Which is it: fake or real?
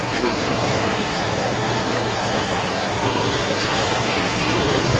fake